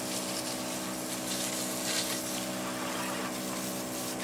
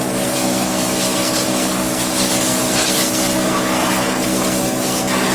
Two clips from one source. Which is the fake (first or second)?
second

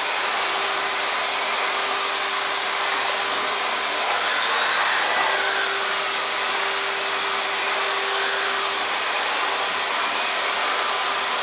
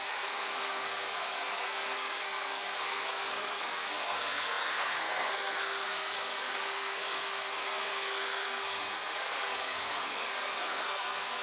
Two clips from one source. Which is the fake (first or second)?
second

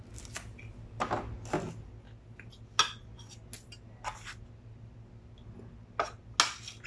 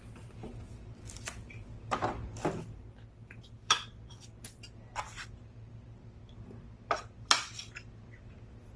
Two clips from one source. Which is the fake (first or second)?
second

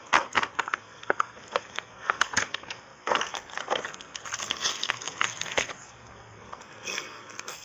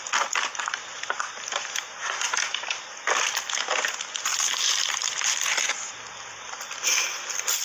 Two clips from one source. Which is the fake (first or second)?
first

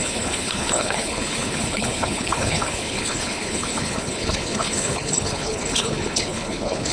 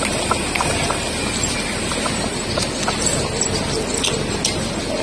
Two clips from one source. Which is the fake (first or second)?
first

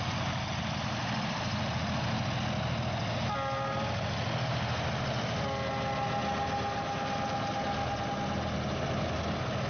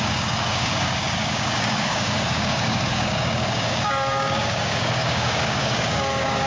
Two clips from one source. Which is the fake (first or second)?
second